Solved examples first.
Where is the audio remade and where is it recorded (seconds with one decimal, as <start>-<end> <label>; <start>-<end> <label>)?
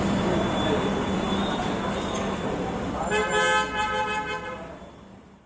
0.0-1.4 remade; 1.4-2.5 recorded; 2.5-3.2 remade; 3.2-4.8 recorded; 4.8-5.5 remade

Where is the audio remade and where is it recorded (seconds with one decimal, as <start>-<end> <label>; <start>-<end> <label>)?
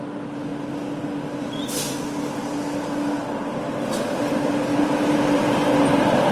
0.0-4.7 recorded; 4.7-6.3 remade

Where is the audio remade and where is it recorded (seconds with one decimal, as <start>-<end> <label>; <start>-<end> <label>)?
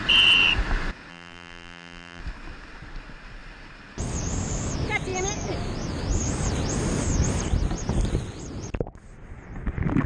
0.0-1.1 recorded; 1.1-2.2 remade; 2.2-10.1 recorded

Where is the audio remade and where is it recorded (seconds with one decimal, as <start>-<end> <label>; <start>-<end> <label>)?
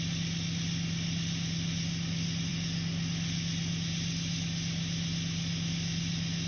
0.0-6.5 recorded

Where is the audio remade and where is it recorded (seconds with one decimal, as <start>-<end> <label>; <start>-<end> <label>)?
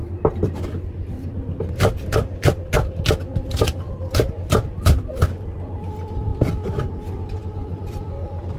0.0-6.3 recorded; 6.3-6.9 remade; 6.9-7.6 recorded; 7.6-8.6 remade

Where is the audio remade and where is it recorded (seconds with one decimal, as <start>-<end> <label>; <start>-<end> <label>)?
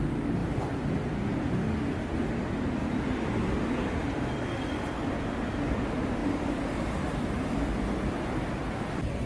0.0-0.4 recorded; 0.4-1.5 remade; 1.5-2.8 recorded; 2.8-5.1 remade; 5.1-6.2 recorded; 6.2-8.9 remade; 8.9-9.3 recorded